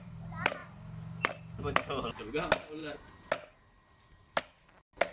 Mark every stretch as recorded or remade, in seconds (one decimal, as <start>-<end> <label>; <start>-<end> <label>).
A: 0.0-5.1 recorded